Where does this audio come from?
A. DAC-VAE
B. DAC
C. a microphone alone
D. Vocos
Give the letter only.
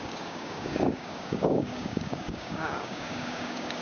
B